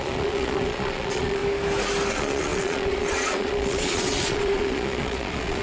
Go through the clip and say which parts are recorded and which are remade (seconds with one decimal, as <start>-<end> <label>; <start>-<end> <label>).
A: 0.0-1.4 remade; 1.4-2.1 recorded; 2.1-5.6 remade